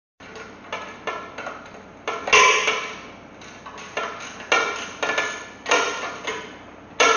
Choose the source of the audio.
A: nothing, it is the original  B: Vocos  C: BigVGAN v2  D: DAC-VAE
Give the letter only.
A